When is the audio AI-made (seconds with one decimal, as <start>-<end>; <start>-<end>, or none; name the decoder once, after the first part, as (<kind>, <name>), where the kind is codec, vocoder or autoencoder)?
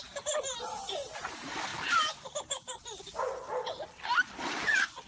none